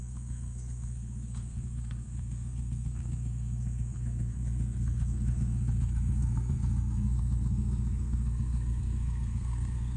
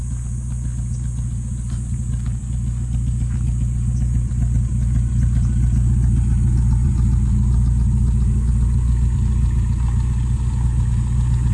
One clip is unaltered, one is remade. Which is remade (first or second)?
first